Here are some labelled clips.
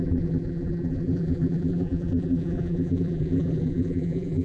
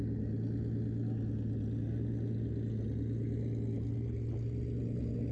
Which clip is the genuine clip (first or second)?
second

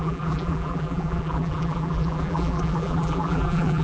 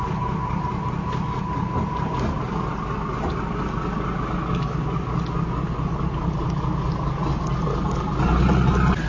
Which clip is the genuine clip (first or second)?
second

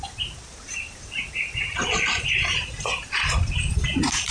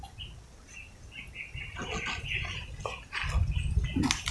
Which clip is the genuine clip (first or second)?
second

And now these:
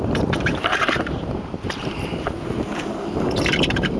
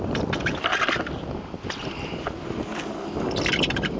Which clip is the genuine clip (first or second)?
second